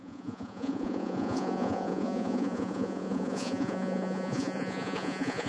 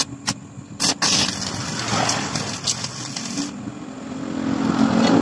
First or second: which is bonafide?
second